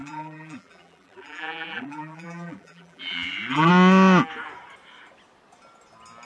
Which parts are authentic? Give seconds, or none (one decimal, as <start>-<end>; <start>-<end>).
3.7-6.2